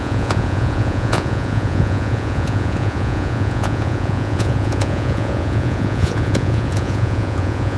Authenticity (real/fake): fake